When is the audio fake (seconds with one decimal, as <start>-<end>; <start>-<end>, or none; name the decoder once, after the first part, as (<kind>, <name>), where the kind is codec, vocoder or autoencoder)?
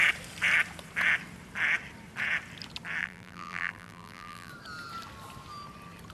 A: 3.0-4.5 (vocoder, BigVGAN v2)